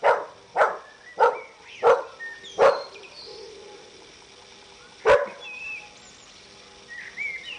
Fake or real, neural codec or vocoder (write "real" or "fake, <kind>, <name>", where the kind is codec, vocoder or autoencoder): real